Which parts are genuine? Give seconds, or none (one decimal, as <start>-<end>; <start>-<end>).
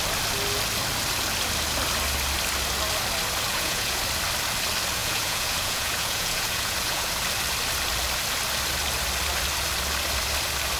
0.0-3.5; 4.0-5.0; 7.1-10.8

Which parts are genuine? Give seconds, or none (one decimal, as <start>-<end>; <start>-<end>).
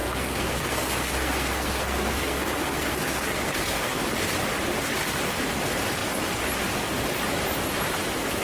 4.0-8.4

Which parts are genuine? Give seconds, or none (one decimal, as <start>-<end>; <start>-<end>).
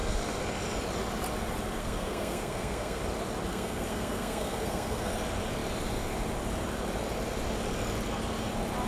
0.0-1.8; 3.0-3.5; 5.1-8.9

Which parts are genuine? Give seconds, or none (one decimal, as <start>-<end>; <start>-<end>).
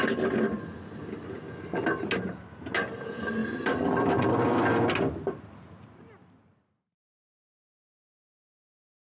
0.0-3.4; 4.3-9.1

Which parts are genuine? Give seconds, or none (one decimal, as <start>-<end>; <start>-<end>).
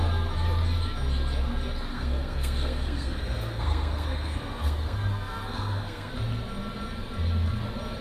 0.0-1.9; 6.1-8.0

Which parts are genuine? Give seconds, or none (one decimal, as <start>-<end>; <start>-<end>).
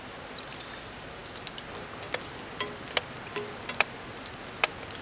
0.0-5.0